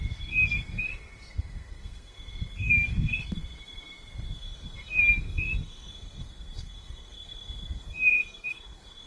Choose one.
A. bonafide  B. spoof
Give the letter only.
B